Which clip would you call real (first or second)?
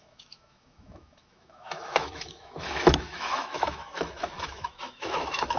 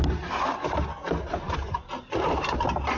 second